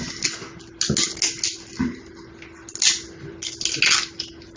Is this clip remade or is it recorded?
recorded